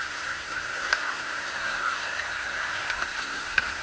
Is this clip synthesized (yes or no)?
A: yes